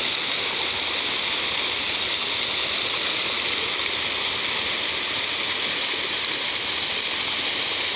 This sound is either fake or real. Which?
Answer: real